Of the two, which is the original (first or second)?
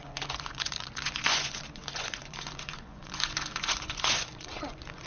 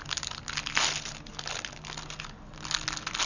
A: second